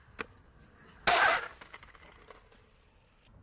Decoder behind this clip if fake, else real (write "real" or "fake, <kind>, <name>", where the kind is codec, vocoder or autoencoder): real